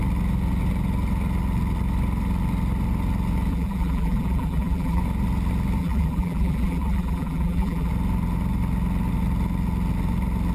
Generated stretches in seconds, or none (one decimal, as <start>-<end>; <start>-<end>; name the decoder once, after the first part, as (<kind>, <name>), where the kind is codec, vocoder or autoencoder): 3.5-5.0 (vocoder, BigVGAN v2); 5.8-7.9